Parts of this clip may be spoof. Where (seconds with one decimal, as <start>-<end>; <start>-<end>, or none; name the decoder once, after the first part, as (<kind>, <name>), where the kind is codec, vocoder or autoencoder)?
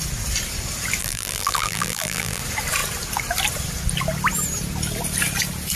1.0-2.4 (vocoder, BigVGAN v2)